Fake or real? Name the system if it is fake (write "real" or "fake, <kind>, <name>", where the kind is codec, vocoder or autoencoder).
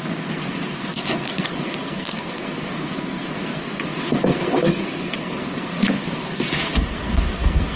fake, codec, SNAC